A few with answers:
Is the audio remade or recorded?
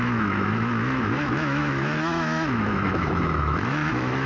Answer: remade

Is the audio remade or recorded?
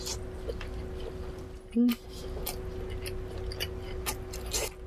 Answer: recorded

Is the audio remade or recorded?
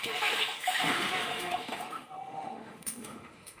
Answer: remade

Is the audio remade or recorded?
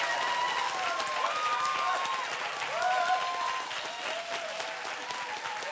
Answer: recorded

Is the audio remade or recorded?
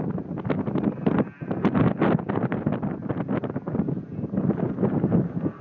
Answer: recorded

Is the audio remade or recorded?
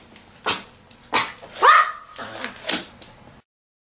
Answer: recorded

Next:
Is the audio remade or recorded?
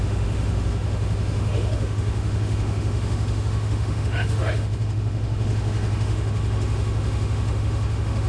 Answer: remade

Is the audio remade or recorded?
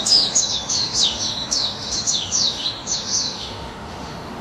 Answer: remade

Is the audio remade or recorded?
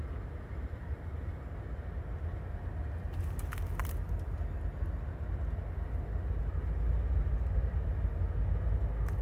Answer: recorded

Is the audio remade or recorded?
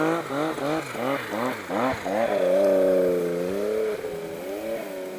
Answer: recorded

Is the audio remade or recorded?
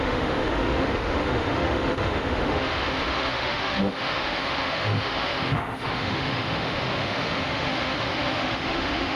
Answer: remade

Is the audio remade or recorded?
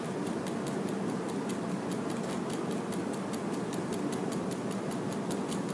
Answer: recorded